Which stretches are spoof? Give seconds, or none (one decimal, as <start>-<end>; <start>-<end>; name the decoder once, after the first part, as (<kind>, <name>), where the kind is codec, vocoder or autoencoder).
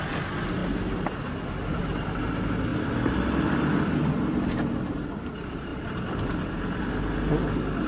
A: none